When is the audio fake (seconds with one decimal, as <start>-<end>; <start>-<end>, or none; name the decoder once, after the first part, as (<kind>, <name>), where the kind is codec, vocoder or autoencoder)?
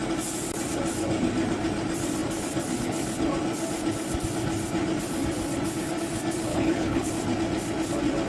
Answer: 6.5-7.1 (codec, HILCodec)